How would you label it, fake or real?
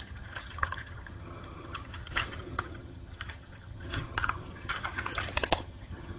fake